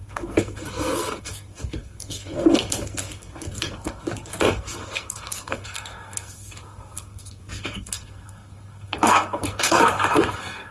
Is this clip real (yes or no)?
no